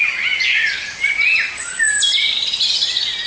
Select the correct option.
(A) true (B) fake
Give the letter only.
A